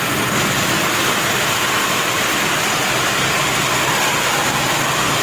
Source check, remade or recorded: recorded